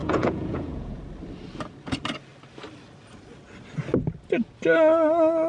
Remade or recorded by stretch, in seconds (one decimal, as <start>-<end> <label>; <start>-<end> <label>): 0.0-1.0 remade; 1.0-5.5 recorded